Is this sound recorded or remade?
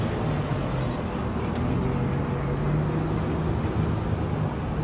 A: recorded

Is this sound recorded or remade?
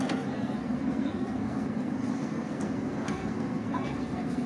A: remade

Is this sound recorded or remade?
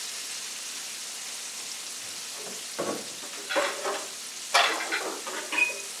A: recorded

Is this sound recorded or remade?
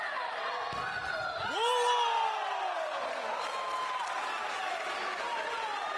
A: recorded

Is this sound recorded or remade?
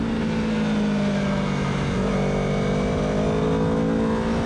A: recorded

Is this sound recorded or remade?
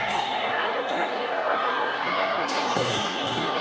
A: remade